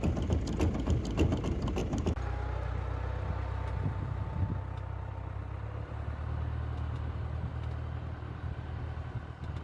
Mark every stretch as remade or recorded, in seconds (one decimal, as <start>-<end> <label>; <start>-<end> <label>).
0.0-9.6 recorded